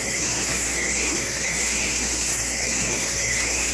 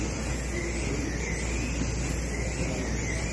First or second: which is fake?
first